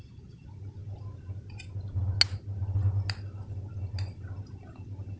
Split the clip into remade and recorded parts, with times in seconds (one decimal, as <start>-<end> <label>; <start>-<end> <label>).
0.0-5.2 recorded